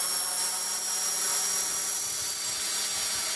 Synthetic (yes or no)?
no